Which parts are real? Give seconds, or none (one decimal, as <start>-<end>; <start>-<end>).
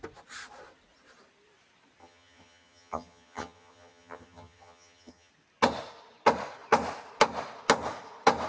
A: 0.0-2.0; 5.3-8.5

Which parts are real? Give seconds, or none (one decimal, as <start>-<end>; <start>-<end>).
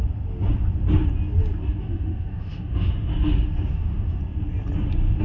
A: 0.0-1.8; 3.1-3.7; 4.2-5.2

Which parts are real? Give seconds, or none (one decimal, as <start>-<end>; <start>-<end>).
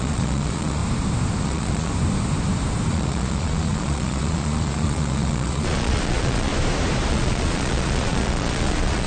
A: 0.8-1.4; 1.9-2.9; 6.5-7.1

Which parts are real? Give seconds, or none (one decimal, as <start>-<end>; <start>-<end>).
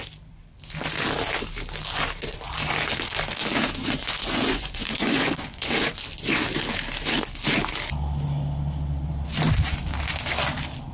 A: 0.0-3.8; 5.7-10.9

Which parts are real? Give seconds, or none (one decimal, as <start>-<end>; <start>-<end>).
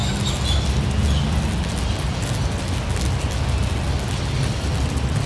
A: 0.0-5.3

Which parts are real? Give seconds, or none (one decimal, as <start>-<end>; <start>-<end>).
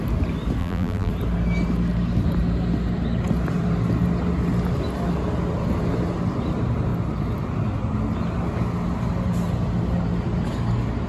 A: 0.0-0.6; 1.1-11.1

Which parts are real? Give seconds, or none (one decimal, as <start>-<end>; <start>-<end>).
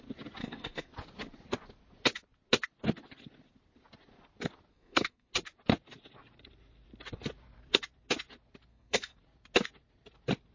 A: 0.0-0.4; 0.9-4.7; 5.3-8.7; 9.2-10.5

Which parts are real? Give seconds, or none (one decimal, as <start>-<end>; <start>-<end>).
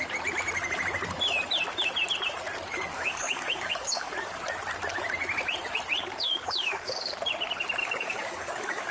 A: 0.0-2.9; 4.4-6.0; 7.1-7.8